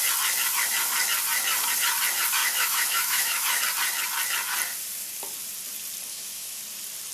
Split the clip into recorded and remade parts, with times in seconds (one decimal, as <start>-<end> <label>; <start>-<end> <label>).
0.0-2.4 recorded; 2.4-3.6 remade; 3.6-6.1 recorded; 6.1-6.6 remade; 6.6-7.1 recorded